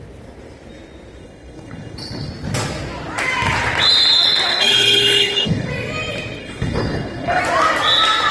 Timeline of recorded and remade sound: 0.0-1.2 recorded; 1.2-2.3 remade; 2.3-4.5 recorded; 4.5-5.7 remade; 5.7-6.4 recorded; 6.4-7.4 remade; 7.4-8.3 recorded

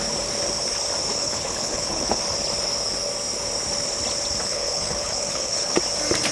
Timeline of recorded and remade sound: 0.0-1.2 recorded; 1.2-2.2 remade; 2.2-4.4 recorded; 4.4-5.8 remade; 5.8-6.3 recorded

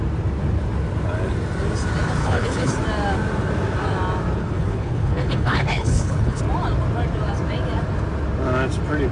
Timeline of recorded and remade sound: 0.0-2.2 recorded; 2.2-2.7 remade; 2.7-4.4 recorded; 4.4-6.4 remade; 6.4-9.1 recorded

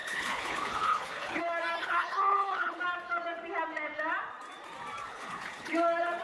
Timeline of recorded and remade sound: 0.0-1.4 remade; 1.4-1.8 recorded; 1.8-2.8 remade; 2.8-5.1 recorded; 5.1-5.7 remade; 5.7-6.2 recorded